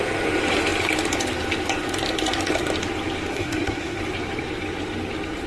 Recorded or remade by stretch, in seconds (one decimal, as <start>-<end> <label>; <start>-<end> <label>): 0.0-3.3 recorded; 3.3-4.0 remade; 4.0-5.5 recorded

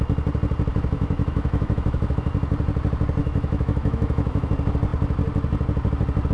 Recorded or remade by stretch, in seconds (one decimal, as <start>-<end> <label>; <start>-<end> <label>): 0.0-0.7 recorded; 0.7-2.3 remade; 2.3-3.2 recorded; 3.2-4.5 remade; 4.5-6.3 recorded

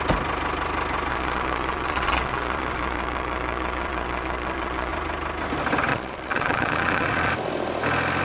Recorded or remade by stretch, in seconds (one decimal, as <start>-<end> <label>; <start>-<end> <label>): 0.0-1.1 recorded; 1.1-4.9 remade; 4.9-5.9 recorded; 5.9-7.3 remade; 7.3-8.2 recorded

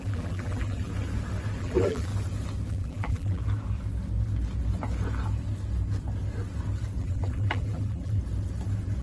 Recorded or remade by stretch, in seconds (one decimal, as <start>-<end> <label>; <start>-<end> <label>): 0.0-0.9 remade; 0.9-1.6 recorded; 1.6-2.1 remade; 2.1-2.7 recorded; 2.7-3.4 remade; 3.4-7.0 recorded; 7.0-8.2 remade; 8.2-9.0 recorded

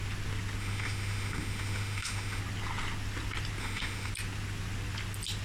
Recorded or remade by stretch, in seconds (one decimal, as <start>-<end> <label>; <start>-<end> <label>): 0.0-0.6 recorded; 0.6-2.4 remade; 2.4-3.6 recorded; 3.6-4.1 remade; 4.1-5.4 recorded

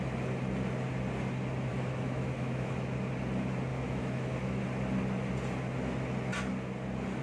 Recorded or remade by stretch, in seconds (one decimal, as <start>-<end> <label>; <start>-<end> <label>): 0.0-1.7 recorded; 1.7-2.7 remade; 2.7-3.7 recorded; 3.7-4.6 remade; 4.6-7.2 recorded

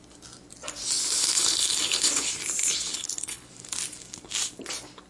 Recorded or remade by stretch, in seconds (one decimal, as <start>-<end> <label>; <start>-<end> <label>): 0.0-1.2 recorded; 1.2-2.3 remade; 2.3-2.9 recorded; 2.9-3.5 remade; 3.5-5.1 recorded